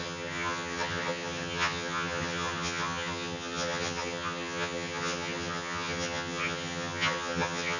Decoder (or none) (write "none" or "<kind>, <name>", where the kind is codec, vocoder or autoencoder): vocoder, HiFi-GAN